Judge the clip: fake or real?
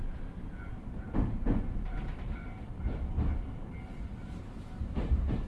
real